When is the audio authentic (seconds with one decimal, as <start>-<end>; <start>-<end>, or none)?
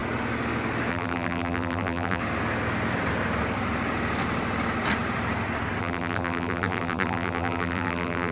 0.0-0.9; 2.2-5.8